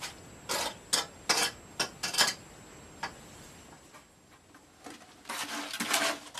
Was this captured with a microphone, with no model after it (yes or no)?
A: yes